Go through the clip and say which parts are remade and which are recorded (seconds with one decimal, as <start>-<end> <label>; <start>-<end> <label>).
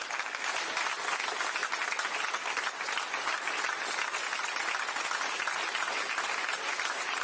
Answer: 0.0-7.2 recorded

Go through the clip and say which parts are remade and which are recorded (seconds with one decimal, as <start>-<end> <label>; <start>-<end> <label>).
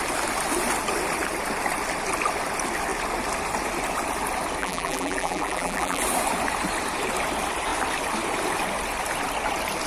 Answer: 0.0-4.6 recorded; 4.6-6.0 remade; 6.0-9.9 recorded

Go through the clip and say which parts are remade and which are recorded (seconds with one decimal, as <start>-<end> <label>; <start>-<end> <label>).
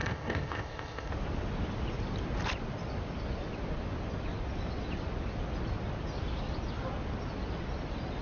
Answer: 0.0-1.1 remade; 1.1-8.2 recorded